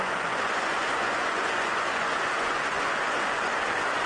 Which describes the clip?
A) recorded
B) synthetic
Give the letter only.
B